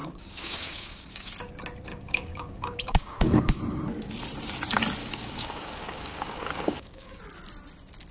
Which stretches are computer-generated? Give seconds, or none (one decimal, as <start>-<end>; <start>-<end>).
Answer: 0.0-1.3; 1.9-3.6; 5.0-7.2